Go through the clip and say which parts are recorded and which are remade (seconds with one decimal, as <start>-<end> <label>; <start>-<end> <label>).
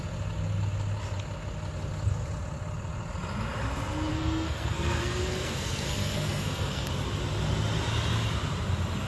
0.0-4.1 recorded; 4.1-6.9 remade; 6.9-9.1 recorded